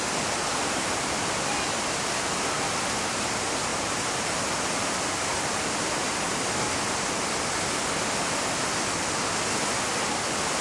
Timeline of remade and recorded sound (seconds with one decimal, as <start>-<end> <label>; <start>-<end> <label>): 0.0-3.7 recorded; 3.7-6.2 remade; 6.2-10.6 recorded